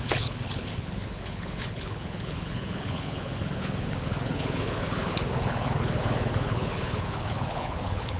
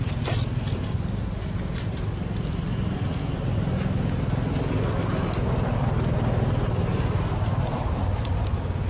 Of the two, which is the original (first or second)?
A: second